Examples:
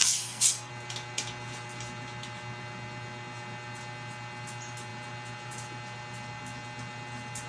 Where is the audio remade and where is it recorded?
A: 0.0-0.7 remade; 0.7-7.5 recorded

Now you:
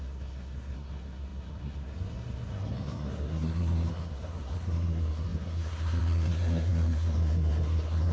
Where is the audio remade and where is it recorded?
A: 0.0-8.1 remade

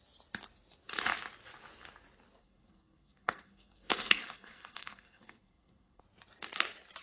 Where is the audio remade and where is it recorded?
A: 0.0-2.4 recorded; 2.4-6.0 remade; 6.0-7.0 recorded

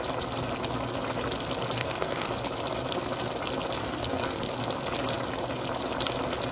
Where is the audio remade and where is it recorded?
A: 0.0-1.8 recorded; 1.8-2.3 remade; 2.3-3.8 recorded; 3.8-4.5 remade; 4.5-6.5 recorded